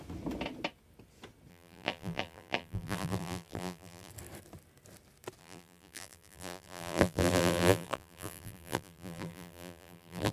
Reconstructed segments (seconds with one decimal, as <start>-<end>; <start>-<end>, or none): 1.5-4.1; 5.4-10.3